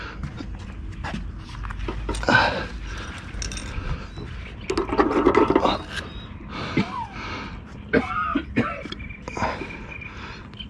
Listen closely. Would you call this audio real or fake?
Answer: real